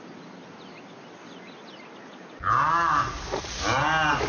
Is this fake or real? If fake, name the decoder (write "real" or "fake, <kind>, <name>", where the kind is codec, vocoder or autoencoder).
real